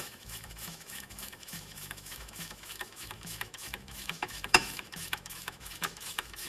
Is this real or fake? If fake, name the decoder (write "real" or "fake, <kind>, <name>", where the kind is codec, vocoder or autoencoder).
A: fake, autoencoder, DAC-VAE